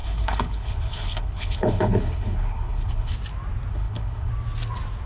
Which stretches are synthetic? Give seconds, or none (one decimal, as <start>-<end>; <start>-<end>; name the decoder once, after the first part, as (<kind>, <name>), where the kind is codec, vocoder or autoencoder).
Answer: 0.0-3.1 (codec, HILCodec); 3.7-4.3